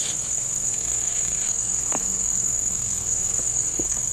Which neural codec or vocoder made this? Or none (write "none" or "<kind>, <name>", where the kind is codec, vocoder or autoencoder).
codec, SNAC